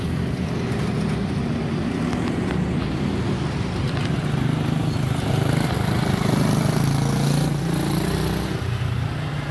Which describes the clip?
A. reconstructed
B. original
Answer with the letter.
B